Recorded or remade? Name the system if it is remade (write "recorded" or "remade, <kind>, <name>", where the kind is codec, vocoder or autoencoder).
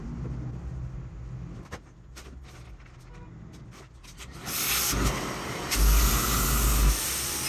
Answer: recorded